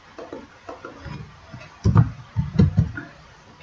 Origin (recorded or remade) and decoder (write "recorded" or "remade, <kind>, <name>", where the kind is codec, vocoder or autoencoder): recorded